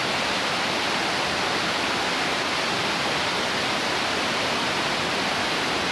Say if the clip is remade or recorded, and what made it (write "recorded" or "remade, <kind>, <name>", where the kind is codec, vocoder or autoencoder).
recorded